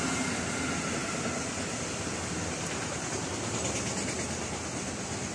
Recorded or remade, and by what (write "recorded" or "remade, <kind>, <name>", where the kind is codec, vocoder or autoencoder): recorded